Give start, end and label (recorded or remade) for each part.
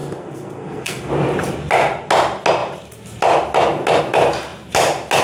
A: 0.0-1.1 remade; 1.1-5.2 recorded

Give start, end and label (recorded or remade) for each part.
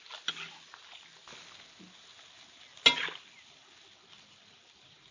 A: 0.0-5.1 recorded